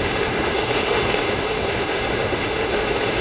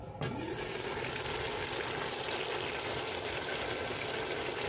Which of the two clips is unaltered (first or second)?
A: second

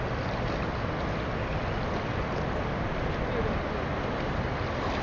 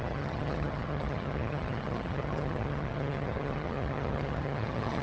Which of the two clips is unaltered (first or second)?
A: first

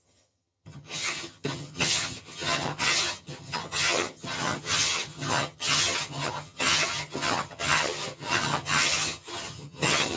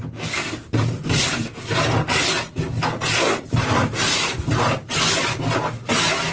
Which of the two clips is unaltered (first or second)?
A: second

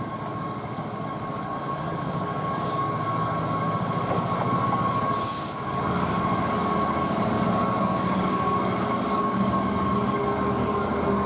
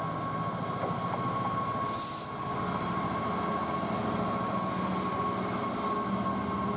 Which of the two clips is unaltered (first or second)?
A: second